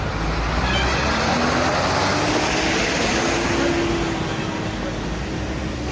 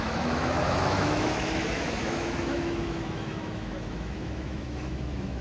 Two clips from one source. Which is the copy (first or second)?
second